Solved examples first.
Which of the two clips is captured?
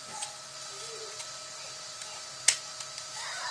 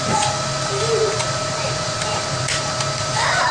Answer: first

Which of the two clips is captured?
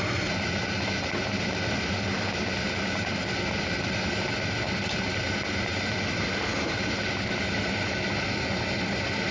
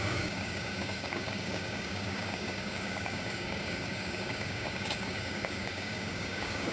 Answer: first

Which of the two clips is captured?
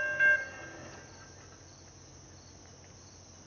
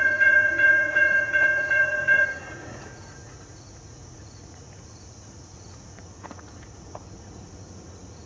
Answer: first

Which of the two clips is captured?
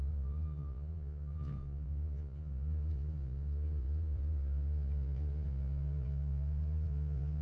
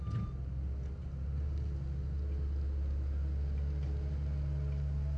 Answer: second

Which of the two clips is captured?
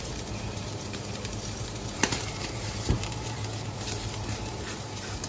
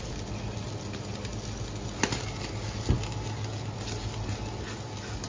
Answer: second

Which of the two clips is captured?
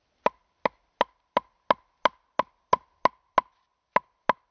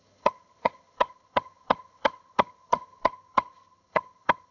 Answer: first